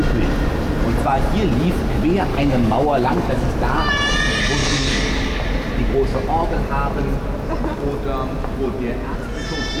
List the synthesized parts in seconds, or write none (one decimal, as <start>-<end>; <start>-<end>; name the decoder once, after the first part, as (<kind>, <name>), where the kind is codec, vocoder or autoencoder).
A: 2.3-3.5 (codec, DAC); 4.6-5.4